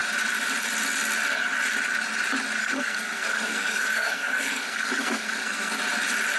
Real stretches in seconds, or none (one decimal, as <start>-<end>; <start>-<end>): 0.0-2.6; 5.8-6.4